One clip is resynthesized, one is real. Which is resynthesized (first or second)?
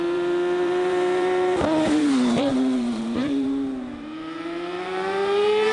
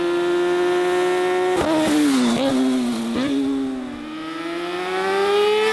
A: first